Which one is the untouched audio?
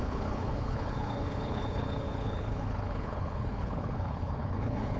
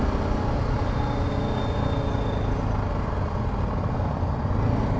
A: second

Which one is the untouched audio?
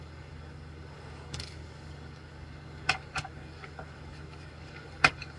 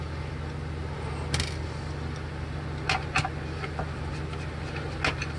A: second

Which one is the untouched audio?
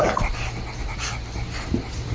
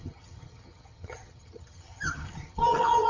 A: first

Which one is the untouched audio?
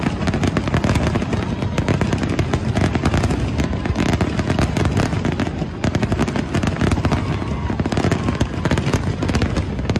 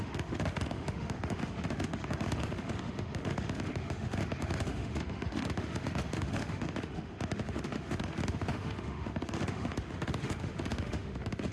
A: first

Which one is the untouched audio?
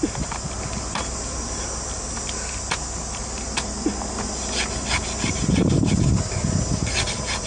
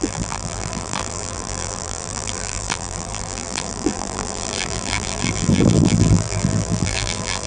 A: first